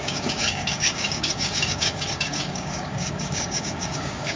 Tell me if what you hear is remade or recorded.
remade